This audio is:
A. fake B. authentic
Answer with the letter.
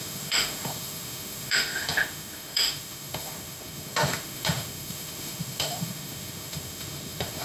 A